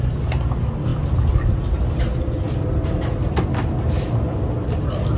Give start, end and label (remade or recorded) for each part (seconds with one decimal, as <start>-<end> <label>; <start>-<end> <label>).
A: 0.0-5.2 recorded